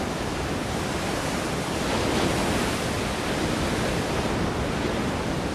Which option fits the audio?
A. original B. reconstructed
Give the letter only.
A